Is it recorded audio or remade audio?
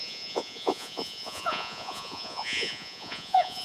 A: remade